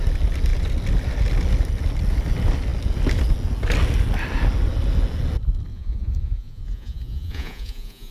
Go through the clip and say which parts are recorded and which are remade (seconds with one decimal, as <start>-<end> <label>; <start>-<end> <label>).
0.0-5.7 recorded; 5.7-8.1 remade